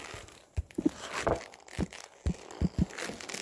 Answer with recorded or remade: recorded